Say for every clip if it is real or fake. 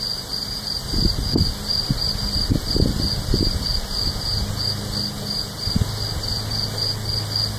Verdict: real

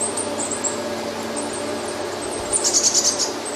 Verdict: real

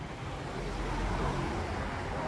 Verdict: real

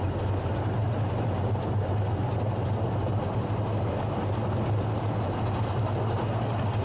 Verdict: real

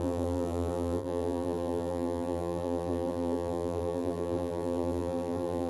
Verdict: fake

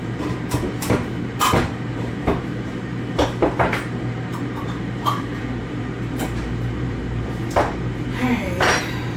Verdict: fake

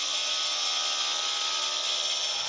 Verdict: real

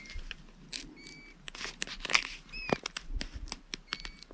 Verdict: real